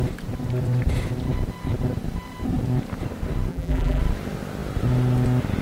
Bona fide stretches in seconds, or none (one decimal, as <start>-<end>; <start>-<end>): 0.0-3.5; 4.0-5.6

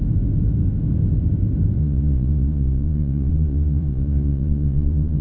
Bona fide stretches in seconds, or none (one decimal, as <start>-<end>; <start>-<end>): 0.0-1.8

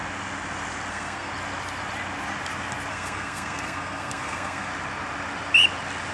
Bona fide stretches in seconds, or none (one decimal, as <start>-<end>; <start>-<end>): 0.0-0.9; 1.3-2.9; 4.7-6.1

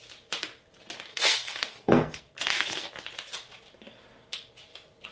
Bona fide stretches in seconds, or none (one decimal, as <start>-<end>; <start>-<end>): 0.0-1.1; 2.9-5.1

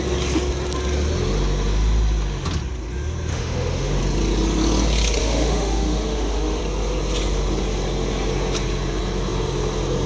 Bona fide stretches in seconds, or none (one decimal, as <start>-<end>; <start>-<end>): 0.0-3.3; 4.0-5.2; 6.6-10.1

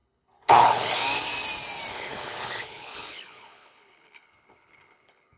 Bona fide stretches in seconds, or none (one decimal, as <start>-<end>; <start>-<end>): 1.0-1.9